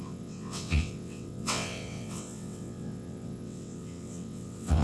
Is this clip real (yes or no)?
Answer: no